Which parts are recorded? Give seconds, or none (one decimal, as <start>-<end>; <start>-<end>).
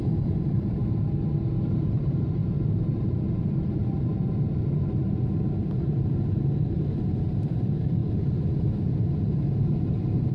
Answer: 0.8-1.7; 8.0-8.9